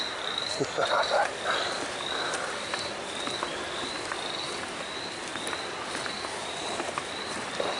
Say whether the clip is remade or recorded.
remade